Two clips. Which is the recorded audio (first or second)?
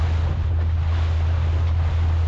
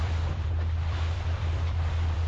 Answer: first